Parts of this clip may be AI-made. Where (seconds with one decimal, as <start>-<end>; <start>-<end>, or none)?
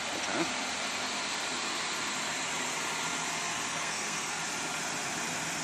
3.7-4.4